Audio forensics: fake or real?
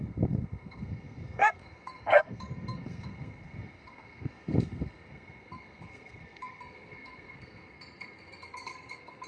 fake